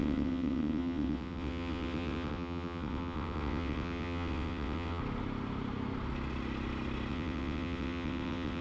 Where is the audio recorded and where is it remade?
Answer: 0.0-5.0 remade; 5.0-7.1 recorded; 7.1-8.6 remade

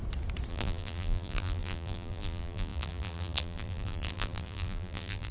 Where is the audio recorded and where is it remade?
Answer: 0.0-0.5 recorded; 0.5-5.3 remade

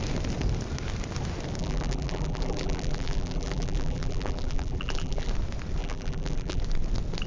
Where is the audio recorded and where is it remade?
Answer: 0.0-1.6 recorded; 1.6-5.3 remade; 5.3-5.8 recorded; 5.8-6.6 remade; 6.6-7.3 recorded

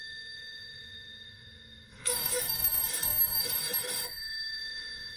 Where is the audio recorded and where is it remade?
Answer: 0.0-5.2 remade

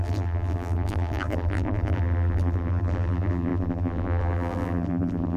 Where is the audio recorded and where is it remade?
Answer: 0.0-5.4 remade